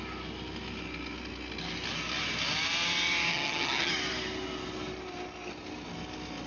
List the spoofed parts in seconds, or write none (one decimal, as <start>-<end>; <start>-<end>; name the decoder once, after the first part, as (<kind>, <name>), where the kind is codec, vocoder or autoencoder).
3.3-3.9 (vocoder, HiFi-GAN)